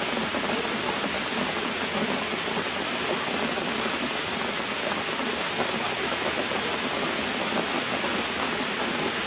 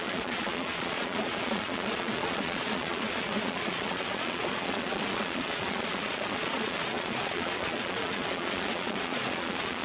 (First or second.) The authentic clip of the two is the first